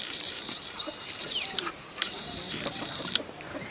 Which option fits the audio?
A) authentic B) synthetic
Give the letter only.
B